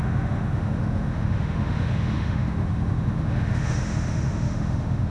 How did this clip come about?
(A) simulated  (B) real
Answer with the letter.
A